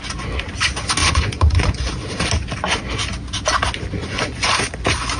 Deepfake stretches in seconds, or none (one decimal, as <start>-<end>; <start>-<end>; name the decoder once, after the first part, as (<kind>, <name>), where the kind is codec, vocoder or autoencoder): 1.0-1.9 (vocoder, Vocos); 4.0-4.5